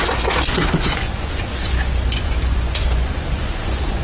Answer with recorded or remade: remade